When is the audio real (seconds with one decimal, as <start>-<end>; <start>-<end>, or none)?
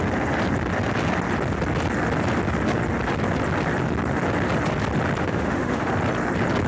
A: 0.0-5.2; 5.9-6.7